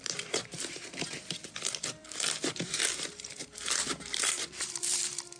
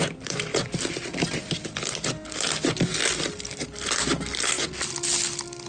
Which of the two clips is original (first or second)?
second